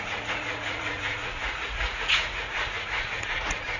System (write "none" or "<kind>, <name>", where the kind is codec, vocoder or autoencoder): vocoder, Vocos